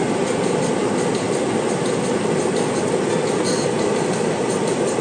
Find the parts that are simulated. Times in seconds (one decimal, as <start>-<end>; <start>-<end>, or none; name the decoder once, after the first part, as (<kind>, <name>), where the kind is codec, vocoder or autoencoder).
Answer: none